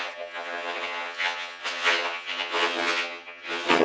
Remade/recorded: remade